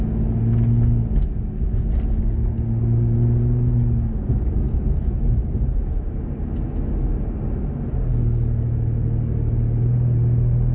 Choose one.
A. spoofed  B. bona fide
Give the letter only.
B